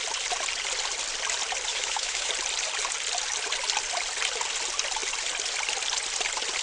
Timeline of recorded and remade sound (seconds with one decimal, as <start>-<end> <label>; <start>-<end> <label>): 0.0-1.7 recorded; 1.7-2.3 remade; 2.3-6.6 recorded